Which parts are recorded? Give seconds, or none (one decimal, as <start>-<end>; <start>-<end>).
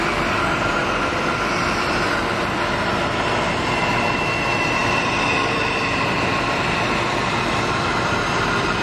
none